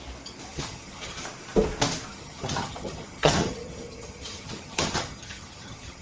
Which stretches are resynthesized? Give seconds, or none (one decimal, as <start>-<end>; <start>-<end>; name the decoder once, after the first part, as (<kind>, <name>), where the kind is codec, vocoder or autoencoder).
0.5-1.2 (vocoder, HiFi-GAN); 2.1-6.0